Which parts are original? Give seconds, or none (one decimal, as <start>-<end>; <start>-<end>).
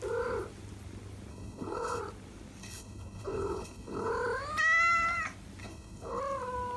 0.0-1.3; 2.0-2.6; 4.1-5.6; 6.2-6.8